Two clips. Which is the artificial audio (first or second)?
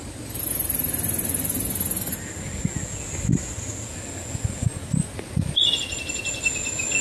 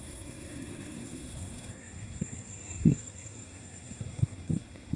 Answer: second